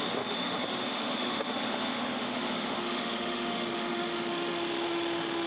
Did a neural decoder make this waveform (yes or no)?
yes